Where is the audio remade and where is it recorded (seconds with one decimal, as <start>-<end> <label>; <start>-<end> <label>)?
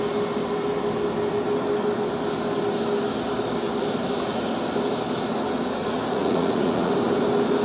0.0-5.8 recorded; 5.8-6.9 remade; 6.9-7.6 recorded